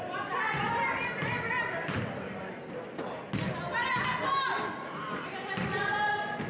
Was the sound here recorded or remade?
recorded